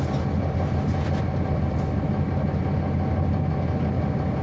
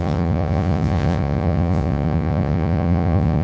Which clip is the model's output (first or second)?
second